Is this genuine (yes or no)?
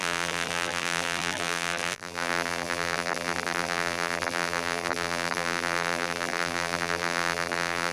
no